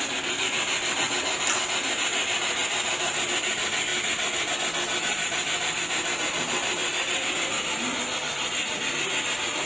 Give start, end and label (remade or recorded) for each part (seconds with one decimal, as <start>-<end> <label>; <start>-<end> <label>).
0.0-6.8 recorded; 6.8-7.3 remade; 7.3-9.7 recorded